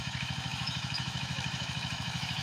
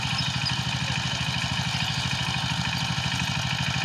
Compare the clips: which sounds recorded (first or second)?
second